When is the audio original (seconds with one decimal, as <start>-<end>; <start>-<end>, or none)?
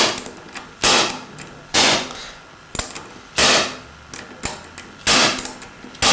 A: 0.0-1.7; 2.4-6.1